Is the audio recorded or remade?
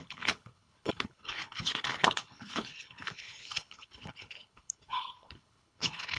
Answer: remade